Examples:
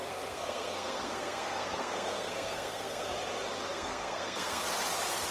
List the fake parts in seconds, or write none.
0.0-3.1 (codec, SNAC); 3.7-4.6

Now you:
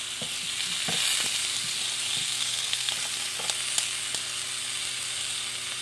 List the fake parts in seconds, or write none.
2.2-2.9 (codec, SNAC)